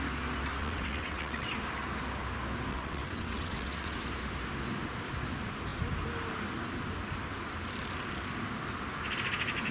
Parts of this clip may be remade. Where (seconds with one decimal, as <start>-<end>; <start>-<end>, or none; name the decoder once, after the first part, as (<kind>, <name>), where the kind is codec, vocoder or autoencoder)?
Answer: 0.6-1.5 (vocoder, WaveNeXt); 2.7-4.0